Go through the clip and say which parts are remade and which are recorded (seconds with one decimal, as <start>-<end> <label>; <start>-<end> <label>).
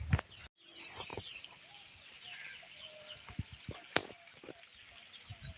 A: 0.0-5.6 recorded